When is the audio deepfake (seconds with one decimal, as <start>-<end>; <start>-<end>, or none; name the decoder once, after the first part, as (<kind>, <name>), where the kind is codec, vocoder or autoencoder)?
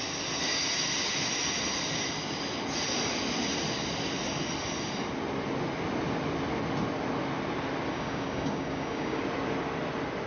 7.9-9.2 (codec, DAC)